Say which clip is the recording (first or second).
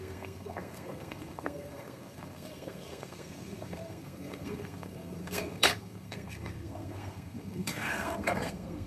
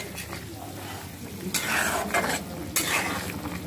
second